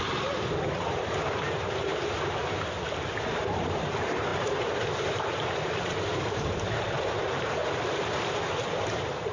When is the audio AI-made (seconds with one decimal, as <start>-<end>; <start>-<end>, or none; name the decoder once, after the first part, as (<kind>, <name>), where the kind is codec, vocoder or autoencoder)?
0.0-2.4 (vocoder, BigVGAN v2); 3.4-9.3